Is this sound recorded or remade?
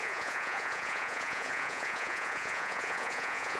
remade